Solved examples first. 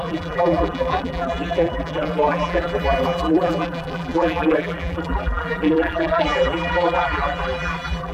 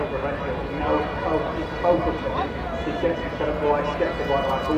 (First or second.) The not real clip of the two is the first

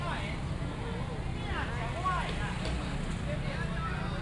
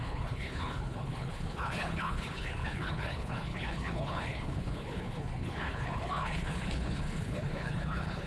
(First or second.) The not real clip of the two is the second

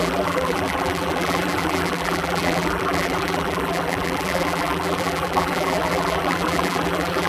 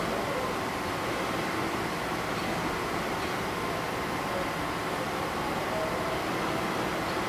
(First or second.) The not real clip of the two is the first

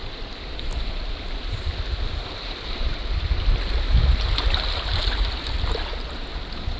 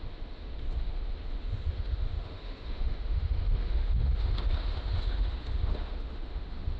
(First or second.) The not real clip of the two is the second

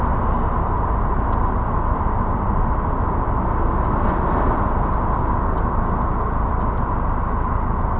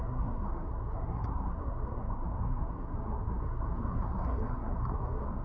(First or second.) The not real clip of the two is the second